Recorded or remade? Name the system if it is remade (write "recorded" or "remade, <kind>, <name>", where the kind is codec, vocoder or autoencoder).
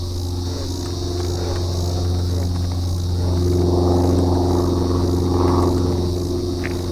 recorded